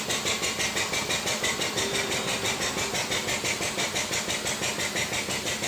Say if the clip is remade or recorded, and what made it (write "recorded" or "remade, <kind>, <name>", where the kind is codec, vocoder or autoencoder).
recorded